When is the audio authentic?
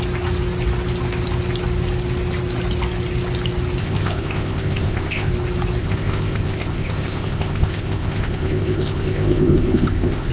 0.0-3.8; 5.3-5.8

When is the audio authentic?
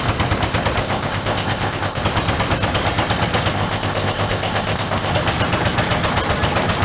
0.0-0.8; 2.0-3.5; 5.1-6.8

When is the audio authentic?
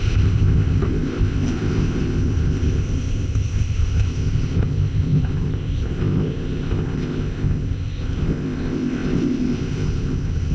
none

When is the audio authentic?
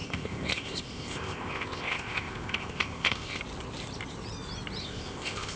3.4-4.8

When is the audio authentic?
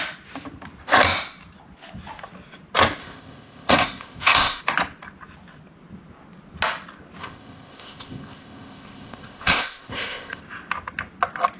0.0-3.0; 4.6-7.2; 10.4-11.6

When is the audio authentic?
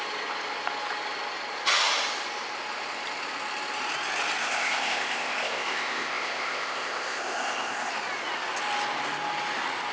0.0-4.4; 7.9-9.9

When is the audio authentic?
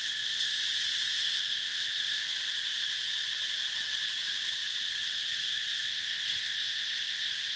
0.6-1.2; 2.2-5.9